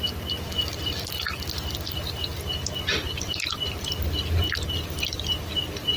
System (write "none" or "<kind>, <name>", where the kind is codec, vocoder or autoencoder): none